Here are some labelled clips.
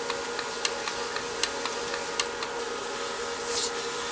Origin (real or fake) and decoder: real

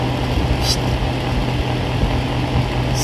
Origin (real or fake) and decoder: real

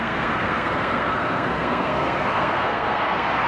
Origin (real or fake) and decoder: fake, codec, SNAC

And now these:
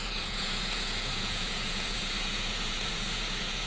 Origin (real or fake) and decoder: fake, vocoder, Vocos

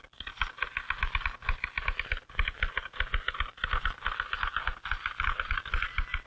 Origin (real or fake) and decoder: real